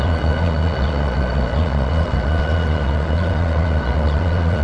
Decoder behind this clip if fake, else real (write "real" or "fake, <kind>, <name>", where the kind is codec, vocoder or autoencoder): fake, vocoder, Vocos